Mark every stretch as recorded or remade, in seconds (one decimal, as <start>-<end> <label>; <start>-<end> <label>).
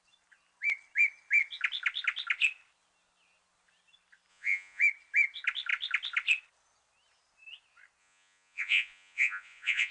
0.0-4.3 recorded; 4.3-4.8 remade; 4.8-8.0 recorded; 8.0-9.9 remade